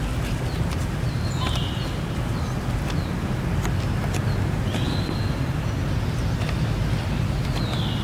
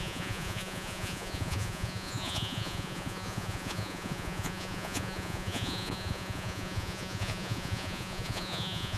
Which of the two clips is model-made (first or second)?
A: second